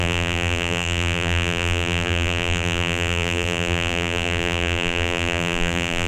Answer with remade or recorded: remade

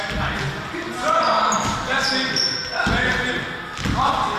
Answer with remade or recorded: recorded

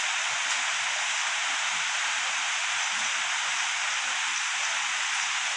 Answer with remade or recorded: recorded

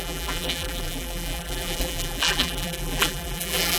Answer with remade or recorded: remade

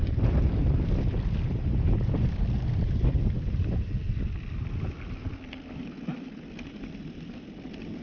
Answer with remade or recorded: recorded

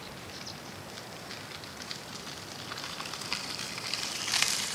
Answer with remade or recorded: remade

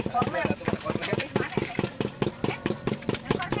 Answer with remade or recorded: remade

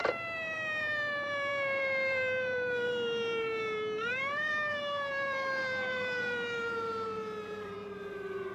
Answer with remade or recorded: remade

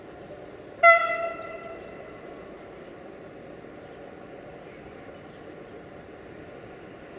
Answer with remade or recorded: recorded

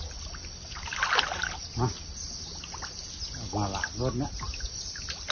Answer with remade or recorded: recorded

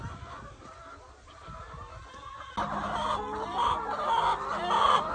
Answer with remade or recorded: recorded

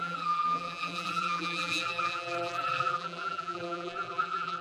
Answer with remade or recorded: remade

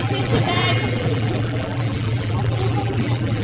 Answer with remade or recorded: remade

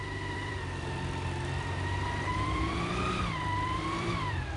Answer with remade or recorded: remade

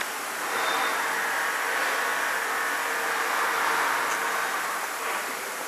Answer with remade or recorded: recorded